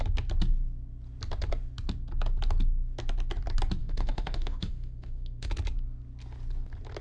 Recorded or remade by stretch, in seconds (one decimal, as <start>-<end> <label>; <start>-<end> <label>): 0.0-3.8 recorded; 3.8-5.5 remade; 5.5-7.0 recorded